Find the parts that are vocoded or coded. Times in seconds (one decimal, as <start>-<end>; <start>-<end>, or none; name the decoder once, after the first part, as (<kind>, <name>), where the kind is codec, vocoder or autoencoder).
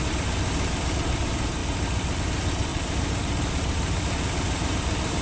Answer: 1.6-2.2 (vocoder, BigVGAN v2); 2.7-5.2